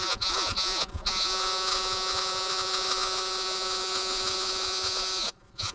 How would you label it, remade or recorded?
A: remade